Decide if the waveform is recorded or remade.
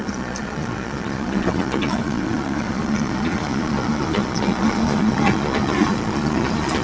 remade